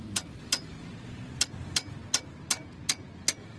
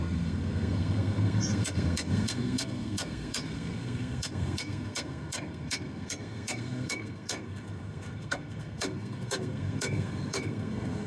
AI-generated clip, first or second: second